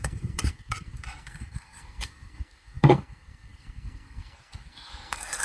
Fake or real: fake